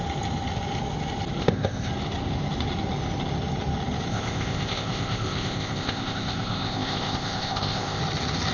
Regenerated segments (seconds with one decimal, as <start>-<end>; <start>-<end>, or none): 1.4-1.9; 4.1-8.0